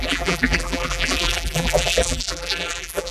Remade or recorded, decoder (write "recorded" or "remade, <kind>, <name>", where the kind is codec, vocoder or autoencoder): remade, vocoder, BigVGAN v2